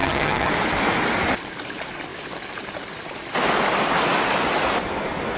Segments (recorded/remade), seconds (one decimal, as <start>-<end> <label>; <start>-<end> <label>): 0.0-0.5 remade; 0.5-5.4 recorded